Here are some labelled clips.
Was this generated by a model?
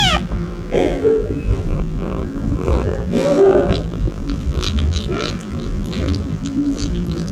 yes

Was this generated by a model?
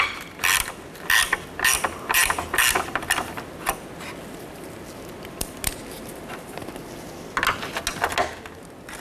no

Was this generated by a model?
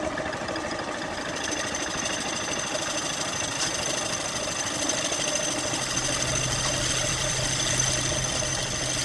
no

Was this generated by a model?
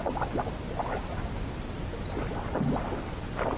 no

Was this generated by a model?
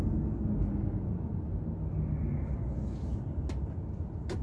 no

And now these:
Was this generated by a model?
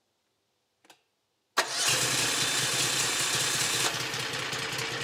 no